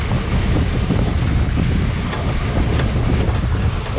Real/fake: real